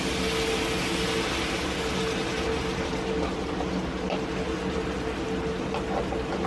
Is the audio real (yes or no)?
yes